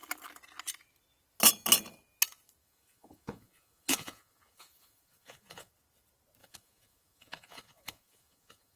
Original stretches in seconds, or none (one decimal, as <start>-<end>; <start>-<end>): 0.0-2.6; 5.7-6.4